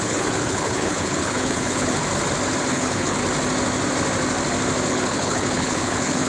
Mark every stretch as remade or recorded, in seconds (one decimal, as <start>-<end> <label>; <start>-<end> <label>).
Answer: 0.0-2.0 remade; 2.0-2.7 recorded; 2.7-3.2 remade; 3.2-4.9 recorded; 4.9-6.3 remade